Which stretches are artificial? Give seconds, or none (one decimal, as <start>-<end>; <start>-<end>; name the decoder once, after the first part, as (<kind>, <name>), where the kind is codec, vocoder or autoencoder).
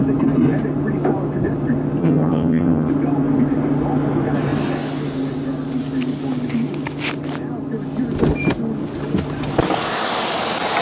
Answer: 2.0-2.9 (vocoder, HiFi-GAN)